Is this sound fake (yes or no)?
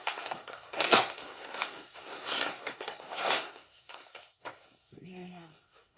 yes